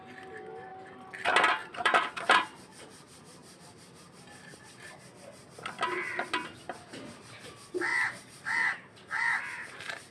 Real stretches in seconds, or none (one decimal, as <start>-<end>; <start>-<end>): 0.0-1.6; 2.6-7.9